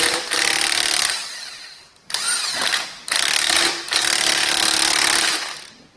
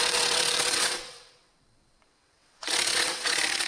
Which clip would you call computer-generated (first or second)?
second